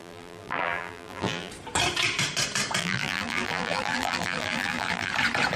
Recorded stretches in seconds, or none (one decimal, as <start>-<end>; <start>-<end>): 1.5-2.8; 5.1-5.6